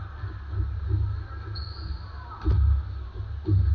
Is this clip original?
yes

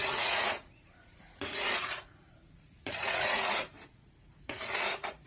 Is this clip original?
no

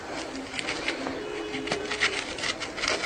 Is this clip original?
yes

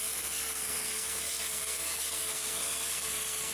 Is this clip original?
no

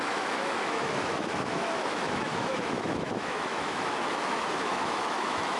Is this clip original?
no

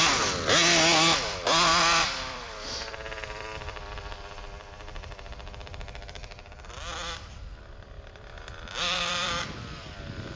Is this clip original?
no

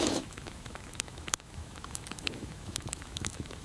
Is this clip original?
no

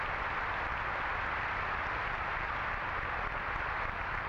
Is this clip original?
yes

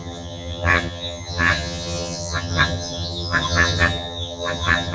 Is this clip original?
no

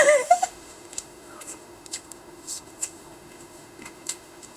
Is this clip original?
no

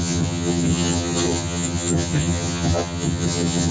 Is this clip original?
no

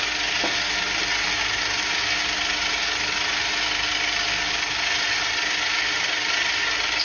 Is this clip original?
yes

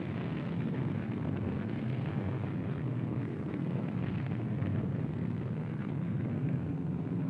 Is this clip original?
no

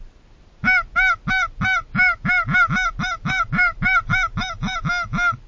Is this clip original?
yes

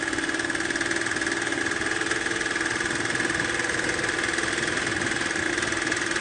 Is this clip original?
yes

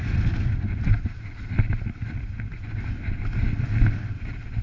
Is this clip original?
yes